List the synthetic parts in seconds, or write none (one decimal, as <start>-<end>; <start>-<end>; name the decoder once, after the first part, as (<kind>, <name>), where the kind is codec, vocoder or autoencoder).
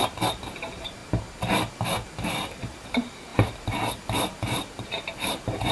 0.0-1.0 (vocoder, BigVGAN v2); 1.7-5.7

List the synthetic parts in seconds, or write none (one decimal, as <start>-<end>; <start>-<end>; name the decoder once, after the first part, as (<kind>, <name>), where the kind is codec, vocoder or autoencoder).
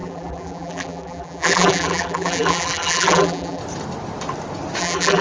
0.0-3.6 (vocoder, BigVGAN v2); 4.8-5.2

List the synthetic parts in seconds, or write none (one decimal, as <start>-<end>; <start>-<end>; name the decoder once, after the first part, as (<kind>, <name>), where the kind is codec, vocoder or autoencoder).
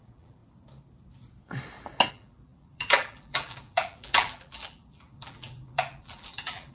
0.0-0.4 (vocoder, BigVGAN v2); 2.1-6.7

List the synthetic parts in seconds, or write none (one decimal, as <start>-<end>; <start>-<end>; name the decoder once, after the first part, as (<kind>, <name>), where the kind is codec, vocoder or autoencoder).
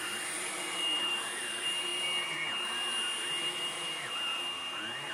0.0-1.9 (vocoder, BigVGAN v2)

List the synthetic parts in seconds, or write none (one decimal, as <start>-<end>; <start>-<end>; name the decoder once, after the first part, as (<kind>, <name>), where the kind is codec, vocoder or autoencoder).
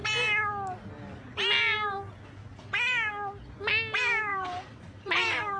4.3-5.6 (vocoder, BigVGAN v2)